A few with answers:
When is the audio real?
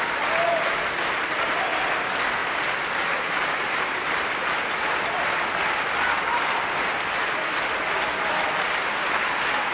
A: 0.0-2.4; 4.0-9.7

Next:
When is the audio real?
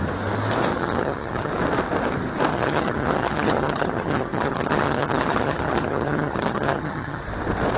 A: 0.0-0.7; 1.5-2.5; 7.2-7.8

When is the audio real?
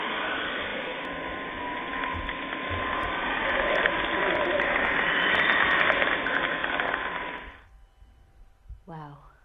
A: 0.0-9.4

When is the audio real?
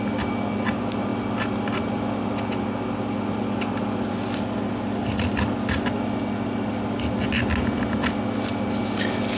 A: 0.0-9.4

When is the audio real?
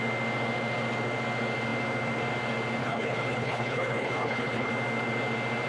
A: 0.0-2.8; 4.7-5.7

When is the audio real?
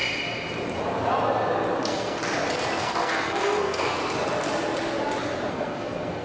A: 0.0-1.8; 2.2-2.8; 4.0-5.5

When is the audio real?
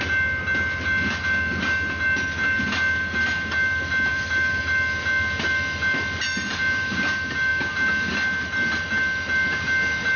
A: 0.0-4.1; 4.6-10.2